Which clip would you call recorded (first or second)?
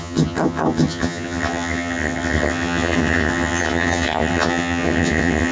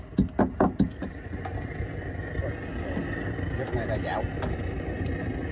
second